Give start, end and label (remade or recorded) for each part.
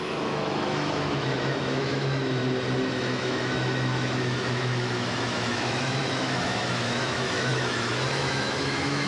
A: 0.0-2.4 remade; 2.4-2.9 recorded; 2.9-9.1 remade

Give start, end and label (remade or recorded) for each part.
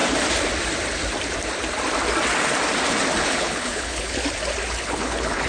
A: 0.0-3.2 recorded; 3.2-4.2 remade; 4.2-4.7 recorded; 4.7-5.5 remade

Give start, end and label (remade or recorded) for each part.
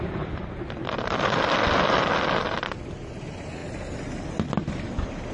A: 0.0-5.3 recorded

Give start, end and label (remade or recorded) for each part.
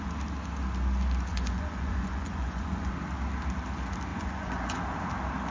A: 0.0-1.3 recorded; 1.3-2.9 remade; 2.9-4.1 recorded; 4.1-4.8 remade; 4.8-5.5 recorded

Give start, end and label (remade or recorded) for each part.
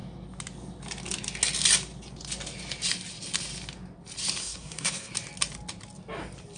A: 0.0-4.4 recorded; 4.4-5.1 remade; 5.1-6.6 recorded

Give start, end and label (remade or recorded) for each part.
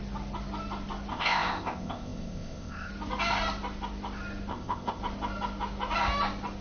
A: 0.0-1.1 recorded; 1.1-2.9 remade; 2.9-4.5 recorded; 4.5-5.0 remade; 5.0-6.6 recorded